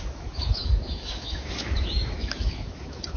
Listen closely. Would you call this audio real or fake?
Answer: fake